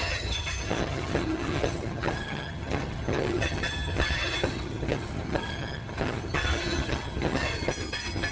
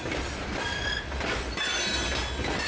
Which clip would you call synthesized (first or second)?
first